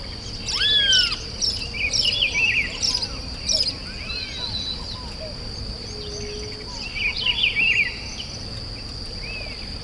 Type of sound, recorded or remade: recorded